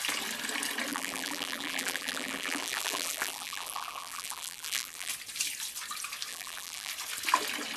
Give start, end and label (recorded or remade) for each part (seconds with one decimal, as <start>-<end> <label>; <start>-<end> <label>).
0.0-0.9 recorded; 0.9-5.1 remade; 5.1-6.3 recorded; 6.3-6.9 remade; 6.9-7.8 recorded